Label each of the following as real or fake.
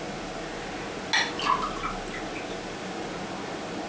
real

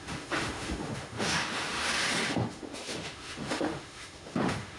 fake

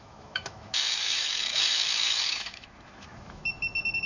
fake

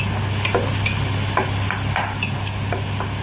real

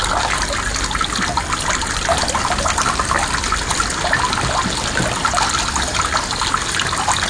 real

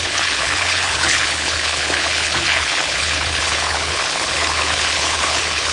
fake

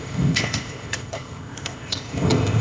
fake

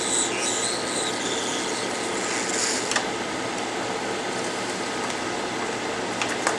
real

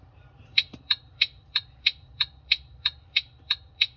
fake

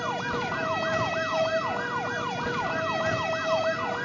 real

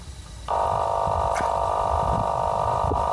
real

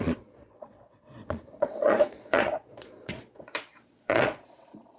fake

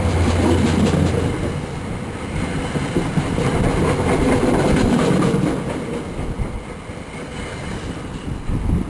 real